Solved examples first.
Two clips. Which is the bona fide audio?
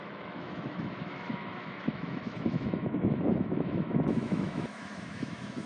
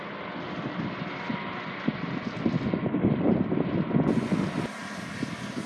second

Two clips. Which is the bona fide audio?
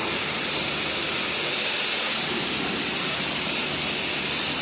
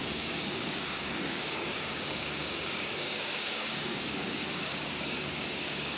first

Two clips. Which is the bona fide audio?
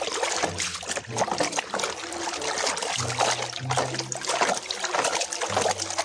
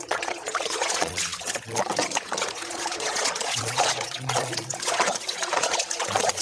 first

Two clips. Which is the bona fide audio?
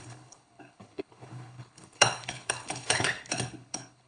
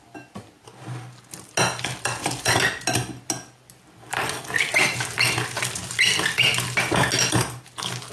second